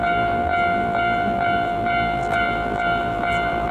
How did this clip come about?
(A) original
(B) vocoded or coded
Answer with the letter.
B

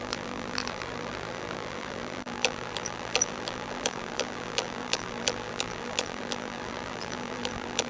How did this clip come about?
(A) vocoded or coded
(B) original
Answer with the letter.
A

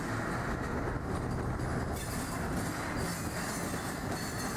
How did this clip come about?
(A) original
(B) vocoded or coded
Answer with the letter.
A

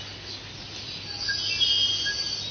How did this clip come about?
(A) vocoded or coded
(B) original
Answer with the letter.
B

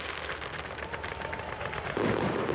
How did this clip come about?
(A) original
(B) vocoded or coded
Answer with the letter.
B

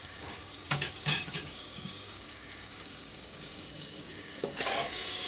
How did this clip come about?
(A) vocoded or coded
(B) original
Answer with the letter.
A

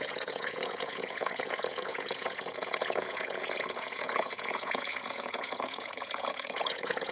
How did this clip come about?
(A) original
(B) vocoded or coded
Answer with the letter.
B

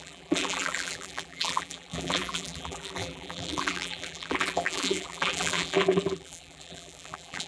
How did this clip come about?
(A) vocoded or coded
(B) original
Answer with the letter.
A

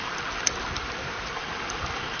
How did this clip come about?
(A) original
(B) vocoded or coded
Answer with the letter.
B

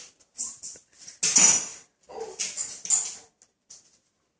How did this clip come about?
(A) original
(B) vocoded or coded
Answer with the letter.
A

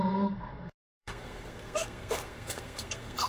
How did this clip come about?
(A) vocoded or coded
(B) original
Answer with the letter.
A